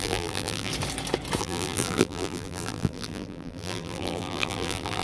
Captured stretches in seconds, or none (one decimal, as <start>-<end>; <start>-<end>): 0.7-1.4